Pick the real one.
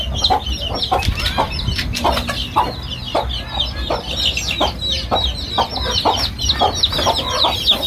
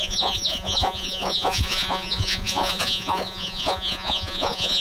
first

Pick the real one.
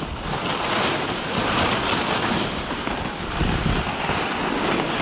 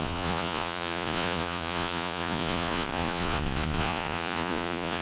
first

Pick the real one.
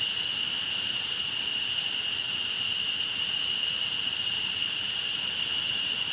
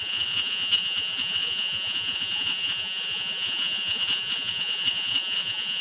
first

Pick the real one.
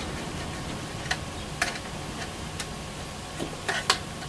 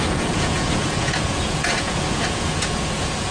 first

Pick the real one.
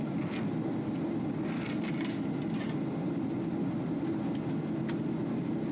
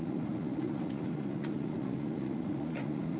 first